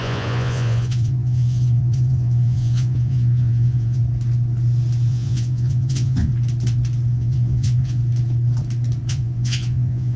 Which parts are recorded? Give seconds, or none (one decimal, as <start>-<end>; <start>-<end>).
4.0-5.1; 6.3-7.1; 8.0-9.1